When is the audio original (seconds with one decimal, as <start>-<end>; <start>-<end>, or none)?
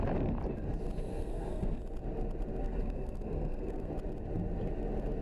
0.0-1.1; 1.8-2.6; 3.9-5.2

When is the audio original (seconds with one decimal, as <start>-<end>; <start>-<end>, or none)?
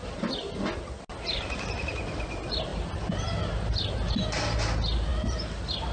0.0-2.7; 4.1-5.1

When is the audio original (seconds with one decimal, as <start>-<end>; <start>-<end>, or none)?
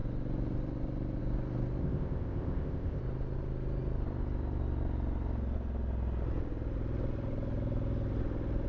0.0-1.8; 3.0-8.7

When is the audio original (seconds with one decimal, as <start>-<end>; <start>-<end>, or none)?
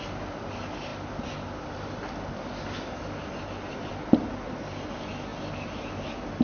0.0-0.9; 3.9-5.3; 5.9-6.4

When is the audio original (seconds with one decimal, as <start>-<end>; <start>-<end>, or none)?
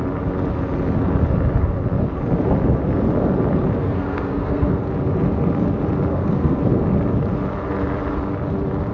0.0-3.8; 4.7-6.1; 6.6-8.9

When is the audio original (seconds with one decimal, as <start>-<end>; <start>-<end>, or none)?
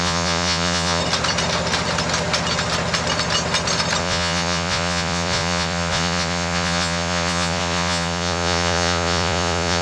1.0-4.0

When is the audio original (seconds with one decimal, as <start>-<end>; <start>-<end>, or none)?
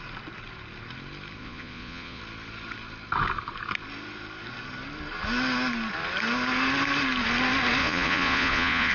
0.0-1.4; 2.2-7.8